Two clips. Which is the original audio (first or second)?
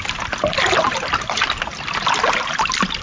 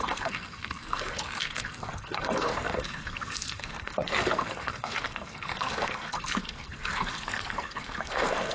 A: first